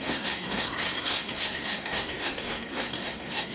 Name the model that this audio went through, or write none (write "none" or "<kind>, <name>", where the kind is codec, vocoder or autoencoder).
codec, SNAC